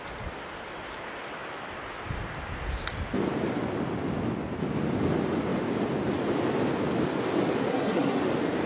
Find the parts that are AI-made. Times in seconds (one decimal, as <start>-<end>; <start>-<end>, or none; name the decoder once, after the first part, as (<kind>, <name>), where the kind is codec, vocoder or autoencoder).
7.7-8.2 (codec, SNAC)